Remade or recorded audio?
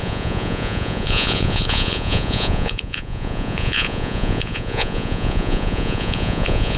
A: remade